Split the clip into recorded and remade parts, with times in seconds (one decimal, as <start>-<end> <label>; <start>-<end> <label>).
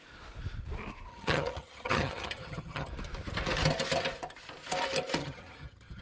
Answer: 0.0-1.1 recorded; 1.1-2.9 remade; 2.9-5.2 recorded; 5.2-6.0 remade